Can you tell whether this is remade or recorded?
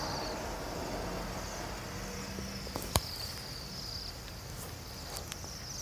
recorded